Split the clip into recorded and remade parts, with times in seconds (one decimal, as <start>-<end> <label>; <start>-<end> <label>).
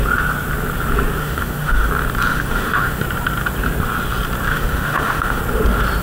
0.0-1.2 recorded; 1.2-1.9 remade; 1.9-2.3 recorded; 2.3-3.0 remade; 3.0-4.5 recorded; 4.5-5.4 remade; 5.4-6.0 recorded